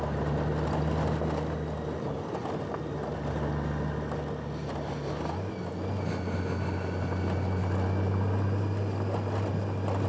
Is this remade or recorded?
recorded